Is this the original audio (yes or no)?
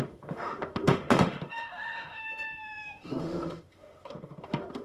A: no